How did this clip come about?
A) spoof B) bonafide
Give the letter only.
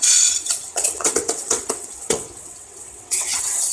A